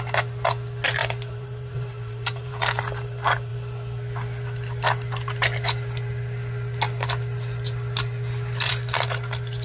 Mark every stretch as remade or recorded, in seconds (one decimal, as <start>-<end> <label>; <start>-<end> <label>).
0.0-1.0 recorded; 1.0-2.8 remade; 2.8-9.6 recorded